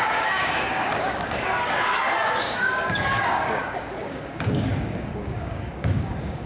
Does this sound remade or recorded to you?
remade